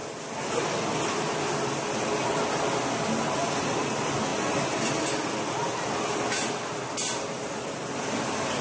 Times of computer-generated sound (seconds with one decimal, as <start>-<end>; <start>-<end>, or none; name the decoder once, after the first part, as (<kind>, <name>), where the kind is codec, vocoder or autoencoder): none